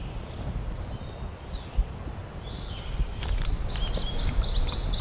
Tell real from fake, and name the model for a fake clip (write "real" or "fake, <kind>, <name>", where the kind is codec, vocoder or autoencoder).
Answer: real